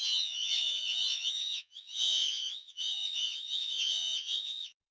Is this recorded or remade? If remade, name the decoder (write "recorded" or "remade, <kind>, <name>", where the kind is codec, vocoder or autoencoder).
remade, vocoder, Vocos